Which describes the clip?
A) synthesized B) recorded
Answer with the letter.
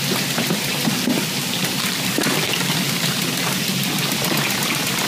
B